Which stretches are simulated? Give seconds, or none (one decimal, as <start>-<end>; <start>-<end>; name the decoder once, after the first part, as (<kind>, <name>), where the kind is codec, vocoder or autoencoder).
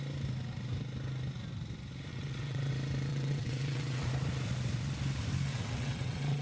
2.1-2.7 (vocoder, WaveNeXt); 3.1-4.1; 5.5-6.4